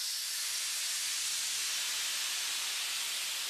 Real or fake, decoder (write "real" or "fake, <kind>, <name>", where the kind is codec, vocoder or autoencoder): real